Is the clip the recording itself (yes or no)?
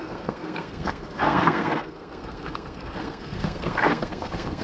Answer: no